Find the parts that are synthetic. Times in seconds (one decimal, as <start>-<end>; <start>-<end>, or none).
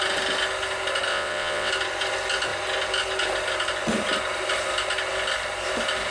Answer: 1.1-1.7